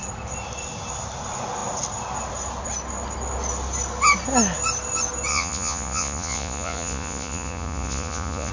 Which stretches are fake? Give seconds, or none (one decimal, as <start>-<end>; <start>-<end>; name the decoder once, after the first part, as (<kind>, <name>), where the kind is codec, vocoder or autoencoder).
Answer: 5.3-8.5 (vocoder, Vocos)